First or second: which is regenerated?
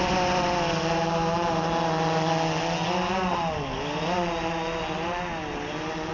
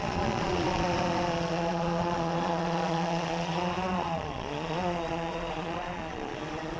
second